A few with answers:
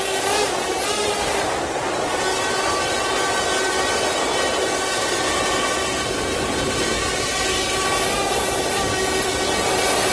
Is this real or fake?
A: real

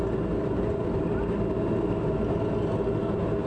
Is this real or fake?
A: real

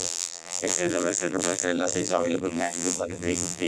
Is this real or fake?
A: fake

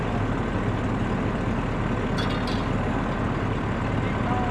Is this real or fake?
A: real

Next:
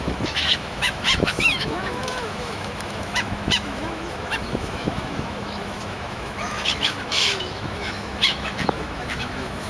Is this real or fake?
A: fake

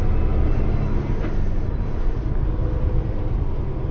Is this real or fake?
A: real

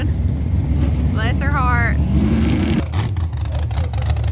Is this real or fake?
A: real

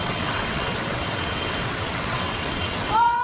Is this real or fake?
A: fake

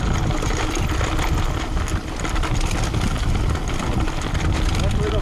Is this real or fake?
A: real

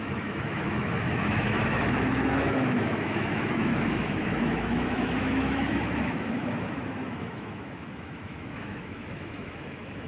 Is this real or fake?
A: fake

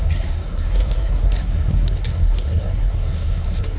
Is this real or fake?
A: fake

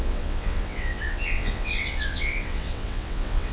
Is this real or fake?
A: fake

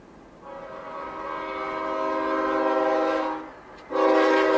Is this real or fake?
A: real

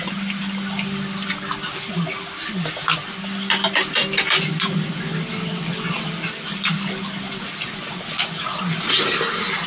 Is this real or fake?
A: real